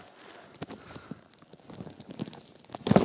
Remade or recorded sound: recorded